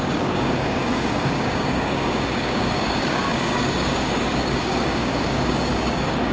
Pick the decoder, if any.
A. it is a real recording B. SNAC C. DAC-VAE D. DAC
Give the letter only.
D